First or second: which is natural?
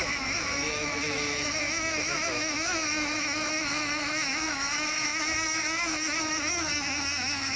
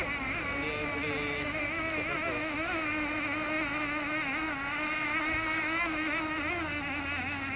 second